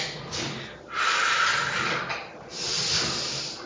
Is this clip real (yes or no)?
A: yes